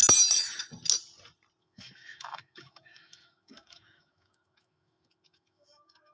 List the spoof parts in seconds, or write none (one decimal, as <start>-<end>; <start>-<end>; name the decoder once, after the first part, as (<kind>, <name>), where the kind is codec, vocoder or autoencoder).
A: 1.6-6.1 (autoencoder, DAC-VAE)